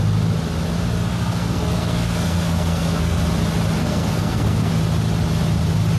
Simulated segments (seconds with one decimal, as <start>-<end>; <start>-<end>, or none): 1.1-3.2; 3.8-4.7